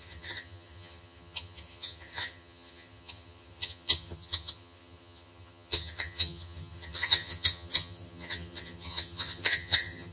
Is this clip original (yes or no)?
no